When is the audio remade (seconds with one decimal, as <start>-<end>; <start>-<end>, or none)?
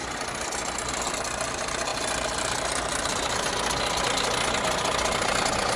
none